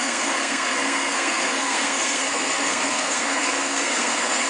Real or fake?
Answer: fake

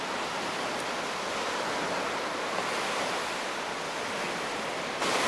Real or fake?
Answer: real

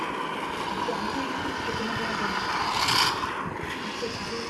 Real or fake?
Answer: real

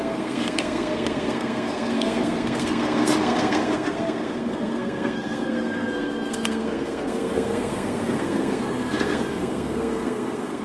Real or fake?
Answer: fake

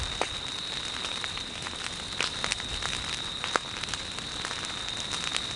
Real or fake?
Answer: real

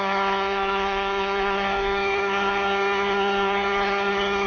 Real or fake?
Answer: fake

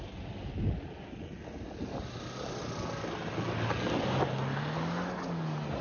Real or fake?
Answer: real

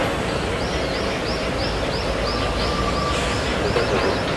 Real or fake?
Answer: real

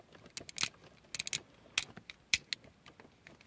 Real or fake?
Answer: real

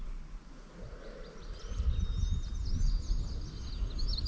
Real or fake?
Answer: real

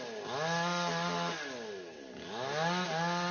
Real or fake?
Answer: real